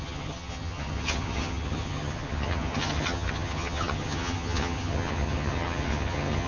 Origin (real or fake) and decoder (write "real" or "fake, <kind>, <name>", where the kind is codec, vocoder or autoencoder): fake, vocoder, HiFi-GAN